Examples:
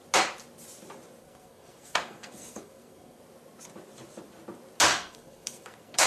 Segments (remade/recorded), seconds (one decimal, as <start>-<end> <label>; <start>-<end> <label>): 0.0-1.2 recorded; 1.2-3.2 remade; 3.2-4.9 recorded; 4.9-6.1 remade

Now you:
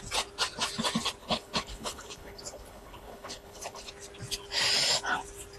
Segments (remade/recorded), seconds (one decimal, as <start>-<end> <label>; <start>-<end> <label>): 0.0-1.2 recorded; 1.2-3.9 remade; 3.9-5.6 recorded

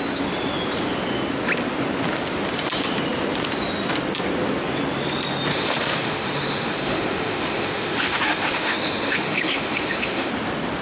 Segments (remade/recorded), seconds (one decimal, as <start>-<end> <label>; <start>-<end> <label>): 0.0-5.5 recorded; 5.5-10.3 remade; 10.3-10.8 recorded